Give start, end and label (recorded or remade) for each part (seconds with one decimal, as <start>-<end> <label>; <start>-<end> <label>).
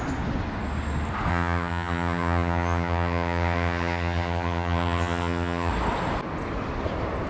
0.0-1.3 recorded; 1.3-5.7 remade; 5.7-7.3 recorded